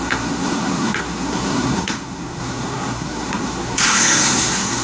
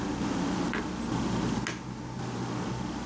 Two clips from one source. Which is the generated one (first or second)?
first